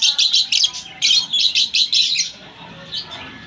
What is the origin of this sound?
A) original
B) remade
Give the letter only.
A